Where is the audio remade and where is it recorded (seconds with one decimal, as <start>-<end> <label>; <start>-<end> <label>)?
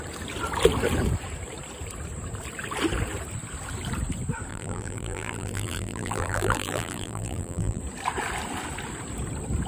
0.0-4.5 recorded; 4.5-7.8 remade; 7.8-9.7 recorded